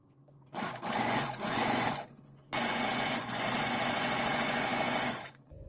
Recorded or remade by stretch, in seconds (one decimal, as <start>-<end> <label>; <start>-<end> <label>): 0.0-5.7 remade